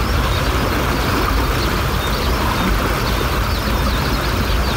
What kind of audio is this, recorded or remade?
recorded